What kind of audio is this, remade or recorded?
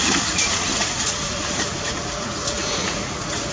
remade